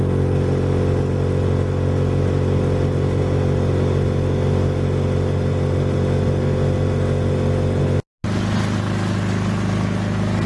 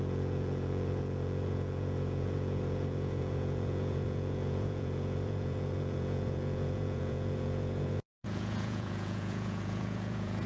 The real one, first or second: first